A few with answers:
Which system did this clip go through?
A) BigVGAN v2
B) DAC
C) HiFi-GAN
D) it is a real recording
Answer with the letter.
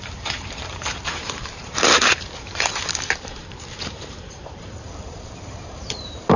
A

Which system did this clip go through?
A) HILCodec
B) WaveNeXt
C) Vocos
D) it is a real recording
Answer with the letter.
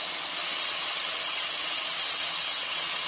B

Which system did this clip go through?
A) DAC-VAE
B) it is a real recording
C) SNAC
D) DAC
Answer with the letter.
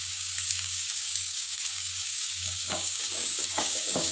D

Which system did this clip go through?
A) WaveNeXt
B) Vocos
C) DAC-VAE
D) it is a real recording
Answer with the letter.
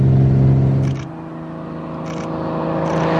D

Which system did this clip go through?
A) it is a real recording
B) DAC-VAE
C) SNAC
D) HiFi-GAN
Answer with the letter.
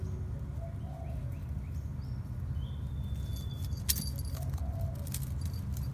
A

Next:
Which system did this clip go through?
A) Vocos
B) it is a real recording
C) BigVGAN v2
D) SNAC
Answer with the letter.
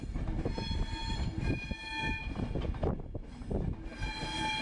B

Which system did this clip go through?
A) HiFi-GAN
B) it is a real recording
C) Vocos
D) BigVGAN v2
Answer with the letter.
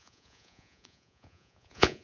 C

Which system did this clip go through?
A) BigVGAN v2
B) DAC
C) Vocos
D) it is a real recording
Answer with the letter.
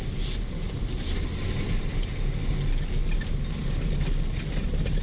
D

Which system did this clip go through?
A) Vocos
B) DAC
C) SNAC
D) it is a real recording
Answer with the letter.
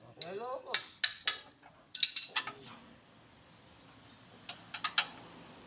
D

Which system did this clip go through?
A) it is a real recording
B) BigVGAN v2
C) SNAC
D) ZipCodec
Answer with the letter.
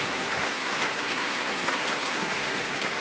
C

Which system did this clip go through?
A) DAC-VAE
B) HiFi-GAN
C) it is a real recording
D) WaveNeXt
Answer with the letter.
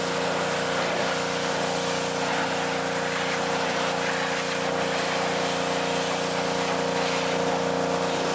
C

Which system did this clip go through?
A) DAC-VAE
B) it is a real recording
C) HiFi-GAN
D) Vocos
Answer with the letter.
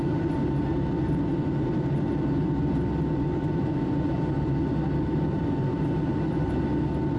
B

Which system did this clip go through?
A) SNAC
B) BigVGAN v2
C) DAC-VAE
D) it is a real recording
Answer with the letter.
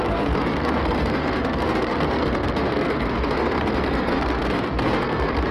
A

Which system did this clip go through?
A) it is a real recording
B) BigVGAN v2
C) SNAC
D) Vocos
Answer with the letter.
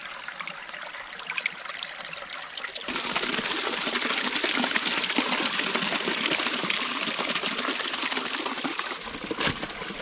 A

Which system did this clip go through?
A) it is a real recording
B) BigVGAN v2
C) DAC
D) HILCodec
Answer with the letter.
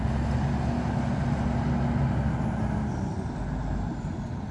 A